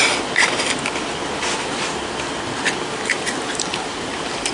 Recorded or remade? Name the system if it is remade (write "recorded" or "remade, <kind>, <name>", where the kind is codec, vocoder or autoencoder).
recorded